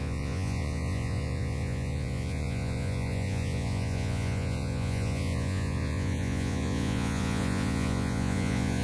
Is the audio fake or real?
fake